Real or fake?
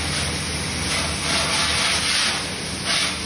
real